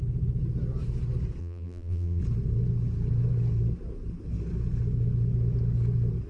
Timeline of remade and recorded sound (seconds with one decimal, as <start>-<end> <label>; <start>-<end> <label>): 0.0-1.4 recorded; 1.4-2.2 remade; 2.2-6.3 recorded